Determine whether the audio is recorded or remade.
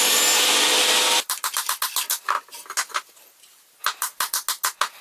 recorded